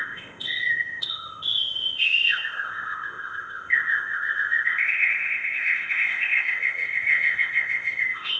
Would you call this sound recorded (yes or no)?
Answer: no